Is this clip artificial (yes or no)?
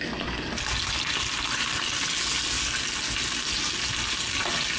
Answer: no